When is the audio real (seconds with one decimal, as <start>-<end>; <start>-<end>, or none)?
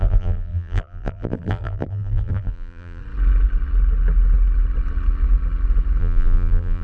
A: 3.0-6.0